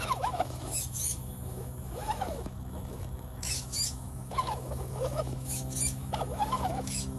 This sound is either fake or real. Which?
fake